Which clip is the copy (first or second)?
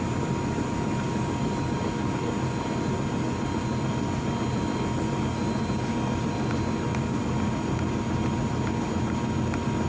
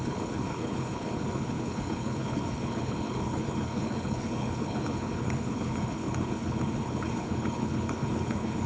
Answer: second